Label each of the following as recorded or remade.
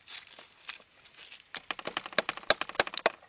recorded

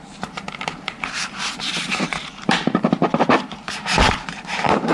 remade